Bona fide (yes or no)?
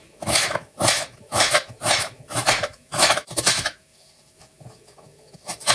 no